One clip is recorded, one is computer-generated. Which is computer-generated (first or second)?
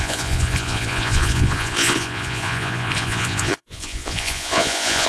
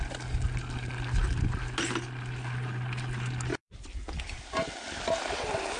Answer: first